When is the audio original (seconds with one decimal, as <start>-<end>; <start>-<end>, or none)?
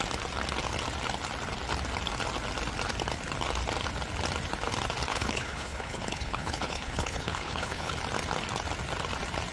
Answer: 0.0-5.1; 7.9-9.5